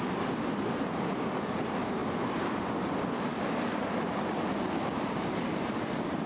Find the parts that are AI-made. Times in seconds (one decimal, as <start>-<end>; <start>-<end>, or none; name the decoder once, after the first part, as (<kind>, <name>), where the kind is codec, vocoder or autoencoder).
none